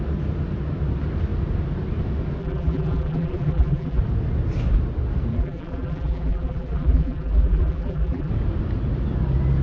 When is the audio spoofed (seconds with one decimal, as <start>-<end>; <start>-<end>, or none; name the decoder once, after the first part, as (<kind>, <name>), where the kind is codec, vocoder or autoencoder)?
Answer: 2.4-4.0 (vocoder, BigVGAN v2); 5.3-8.3